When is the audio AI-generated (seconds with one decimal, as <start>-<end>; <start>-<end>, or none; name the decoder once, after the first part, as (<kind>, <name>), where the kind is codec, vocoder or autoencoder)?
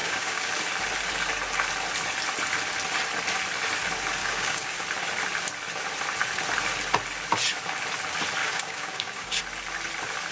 0.0-0.5 (codec, DAC); 4.2-4.8; 8.4-9.4